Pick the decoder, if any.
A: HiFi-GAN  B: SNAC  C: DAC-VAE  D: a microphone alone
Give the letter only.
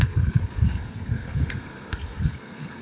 B